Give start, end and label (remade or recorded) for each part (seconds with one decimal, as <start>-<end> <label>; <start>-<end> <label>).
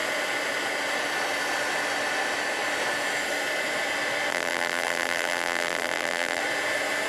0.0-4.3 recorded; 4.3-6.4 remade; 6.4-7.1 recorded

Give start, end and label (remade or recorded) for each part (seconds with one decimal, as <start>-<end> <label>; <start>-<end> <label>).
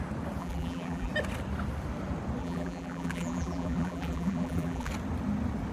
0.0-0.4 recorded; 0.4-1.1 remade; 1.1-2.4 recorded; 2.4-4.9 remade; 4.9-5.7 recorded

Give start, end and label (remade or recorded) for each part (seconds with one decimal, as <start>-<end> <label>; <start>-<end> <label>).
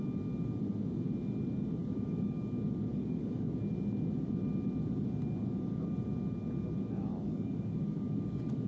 0.0-1.8 recorded; 1.8-2.4 remade; 2.4-2.9 recorded; 2.9-3.6 remade; 3.6-7.1 recorded; 7.1-8.7 remade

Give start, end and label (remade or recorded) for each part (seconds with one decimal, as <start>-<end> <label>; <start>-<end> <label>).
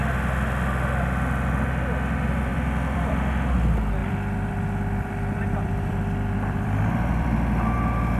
0.0-2.5 recorded; 2.5-3.1 remade; 3.1-4.0 recorded; 4.0-7.3 remade; 7.3-8.2 recorded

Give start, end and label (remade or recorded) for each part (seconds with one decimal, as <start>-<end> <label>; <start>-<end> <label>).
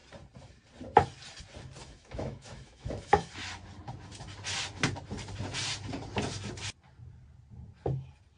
0.0-1.8 recorded; 1.8-3.3 remade; 3.3-8.4 recorded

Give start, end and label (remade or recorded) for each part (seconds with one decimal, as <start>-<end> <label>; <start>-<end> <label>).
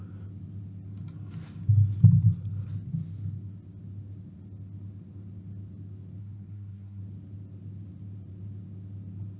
0.0-6.2 recorded; 6.2-7.0 remade; 7.0-9.4 recorded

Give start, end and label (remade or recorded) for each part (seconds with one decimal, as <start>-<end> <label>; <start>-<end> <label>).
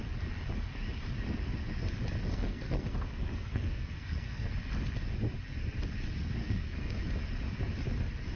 0.0-2.3 recorded; 2.3-4.5 remade; 4.5-6.4 recorded; 6.4-7.0 remade; 7.0-8.4 recorded